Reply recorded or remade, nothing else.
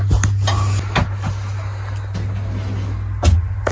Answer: recorded